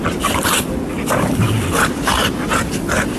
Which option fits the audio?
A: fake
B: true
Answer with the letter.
B